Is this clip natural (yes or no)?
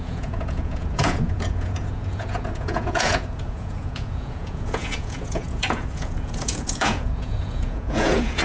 no